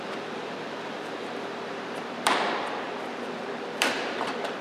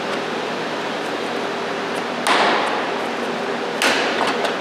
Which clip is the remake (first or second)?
first